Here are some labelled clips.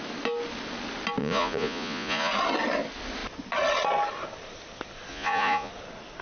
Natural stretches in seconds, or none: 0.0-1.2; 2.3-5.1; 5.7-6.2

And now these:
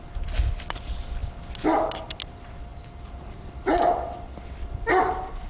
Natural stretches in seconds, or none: 0.0-2.7; 3.4-5.5

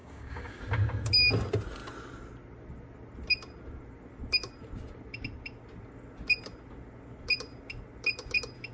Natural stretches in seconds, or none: 0.6-8.7

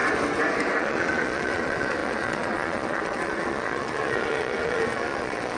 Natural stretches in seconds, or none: 0.0-0.8